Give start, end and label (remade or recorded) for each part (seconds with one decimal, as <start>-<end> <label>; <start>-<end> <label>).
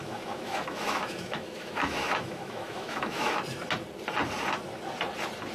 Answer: 0.0-3.3 remade; 3.3-5.5 recorded